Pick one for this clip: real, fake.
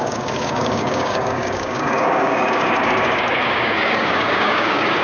fake